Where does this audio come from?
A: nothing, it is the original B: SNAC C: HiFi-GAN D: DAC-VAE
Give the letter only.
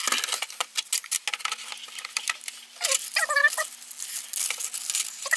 A